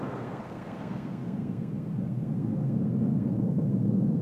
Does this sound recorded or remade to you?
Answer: remade